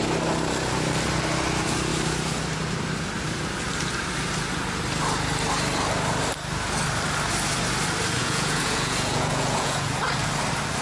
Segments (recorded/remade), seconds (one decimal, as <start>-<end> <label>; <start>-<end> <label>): 0.0-8.2 recorded; 8.2-9.9 remade; 9.9-10.8 recorded